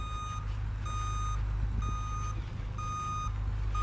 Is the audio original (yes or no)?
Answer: yes